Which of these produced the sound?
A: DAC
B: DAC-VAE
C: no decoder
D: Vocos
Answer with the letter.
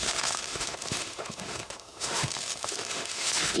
B